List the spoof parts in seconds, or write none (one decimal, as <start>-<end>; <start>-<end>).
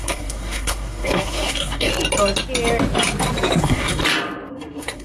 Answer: 0.0-1.9; 3.6-4.0; 4.5-5.0